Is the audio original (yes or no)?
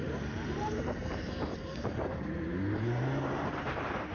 no